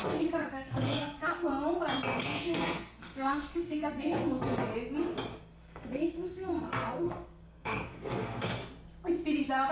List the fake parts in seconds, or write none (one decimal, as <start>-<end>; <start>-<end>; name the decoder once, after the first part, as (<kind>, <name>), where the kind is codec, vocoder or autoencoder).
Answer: 0.0-1.5 (codec, SNAC); 2.2-4.7; 5.4-8.6